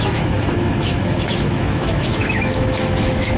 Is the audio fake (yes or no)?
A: yes